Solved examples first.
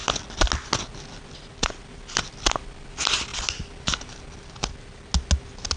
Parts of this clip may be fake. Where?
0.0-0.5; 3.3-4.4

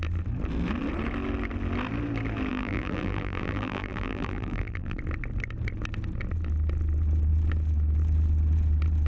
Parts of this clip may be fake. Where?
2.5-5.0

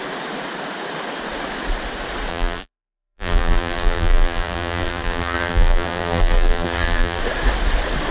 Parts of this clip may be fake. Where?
2.3-7.2